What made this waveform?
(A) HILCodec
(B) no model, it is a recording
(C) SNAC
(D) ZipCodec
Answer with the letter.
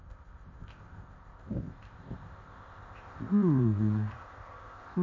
D